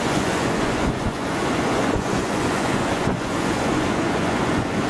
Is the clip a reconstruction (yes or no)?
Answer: yes